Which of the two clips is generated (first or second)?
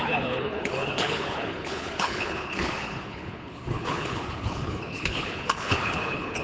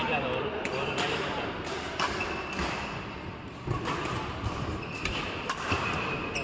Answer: first